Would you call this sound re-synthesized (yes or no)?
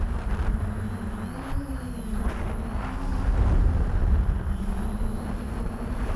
no